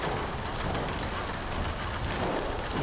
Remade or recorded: recorded